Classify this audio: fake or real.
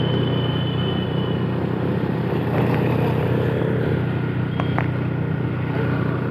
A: real